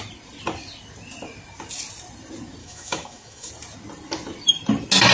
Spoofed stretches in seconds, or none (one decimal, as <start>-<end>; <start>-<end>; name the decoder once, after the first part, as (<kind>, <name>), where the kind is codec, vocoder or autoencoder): 2.6-3.5 (autoencoder, DAC-VAE)